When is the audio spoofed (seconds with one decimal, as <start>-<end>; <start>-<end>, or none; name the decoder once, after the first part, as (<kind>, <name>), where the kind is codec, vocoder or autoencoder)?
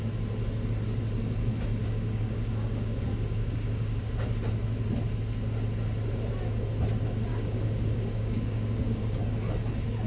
1.8-4.1 (codec, DAC); 7.3-9.2